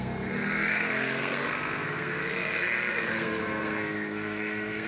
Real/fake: fake